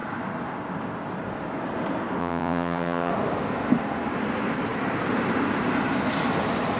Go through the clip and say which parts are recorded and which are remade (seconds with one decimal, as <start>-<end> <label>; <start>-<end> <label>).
0.0-2.2 recorded; 2.2-3.1 remade; 3.1-6.8 recorded